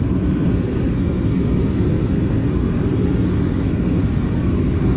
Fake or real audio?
fake